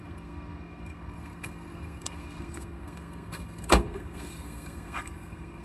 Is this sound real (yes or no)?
no